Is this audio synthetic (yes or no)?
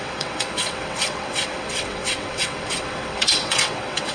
yes